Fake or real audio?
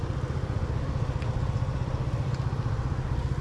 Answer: real